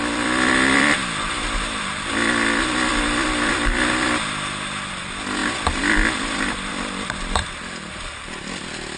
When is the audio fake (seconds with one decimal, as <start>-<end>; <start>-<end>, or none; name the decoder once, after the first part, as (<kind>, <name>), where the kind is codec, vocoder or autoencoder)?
0.0-1.0 (vocoder, BigVGAN v2); 3.5-9.0